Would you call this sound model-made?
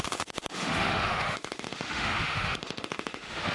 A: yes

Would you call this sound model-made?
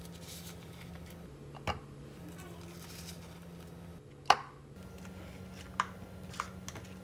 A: no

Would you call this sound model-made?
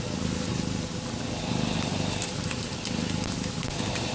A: no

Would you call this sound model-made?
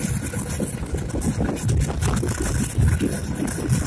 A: no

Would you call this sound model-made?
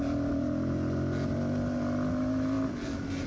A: no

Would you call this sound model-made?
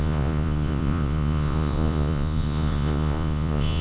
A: yes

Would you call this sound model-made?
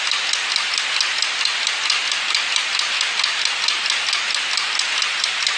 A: no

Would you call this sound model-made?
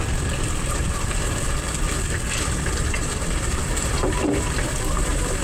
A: yes